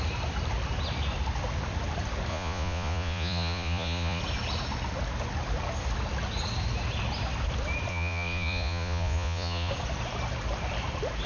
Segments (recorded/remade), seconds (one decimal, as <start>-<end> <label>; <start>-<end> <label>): 0.0-2.3 recorded; 2.3-4.2 remade; 4.2-7.9 recorded; 7.9-9.7 remade; 9.7-11.3 recorded